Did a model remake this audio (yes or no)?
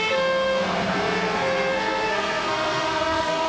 yes